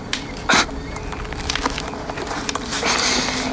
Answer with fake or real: real